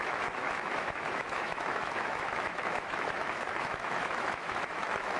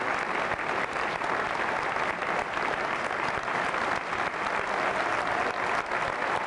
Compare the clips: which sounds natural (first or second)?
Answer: second